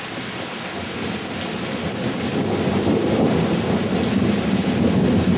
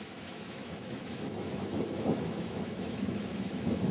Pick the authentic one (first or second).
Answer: first